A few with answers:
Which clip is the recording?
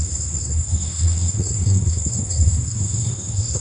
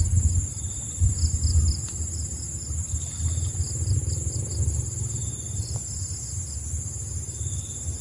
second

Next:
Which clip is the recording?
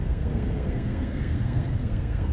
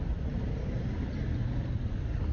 second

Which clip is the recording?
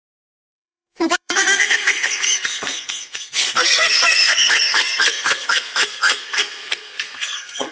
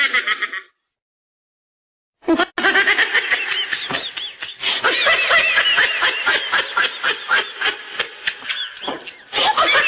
second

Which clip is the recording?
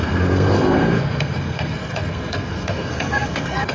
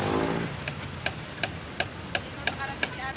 second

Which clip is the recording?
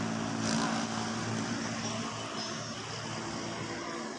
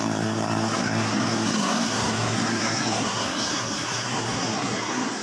first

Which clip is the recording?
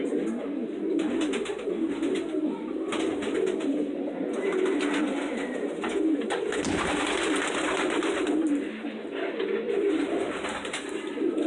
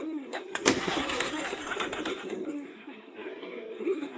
first